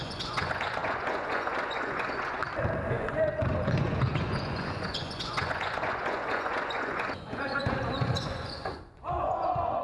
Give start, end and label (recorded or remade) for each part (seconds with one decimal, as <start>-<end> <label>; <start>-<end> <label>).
0.0-2.4 remade; 2.4-2.9 recorded; 2.9-9.8 remade